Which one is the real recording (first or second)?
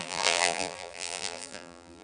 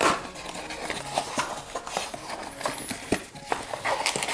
second